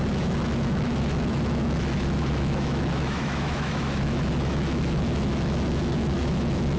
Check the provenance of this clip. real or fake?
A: fake